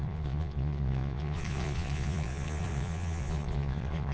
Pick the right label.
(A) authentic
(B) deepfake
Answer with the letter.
B